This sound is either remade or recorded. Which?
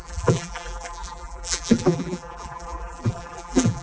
remade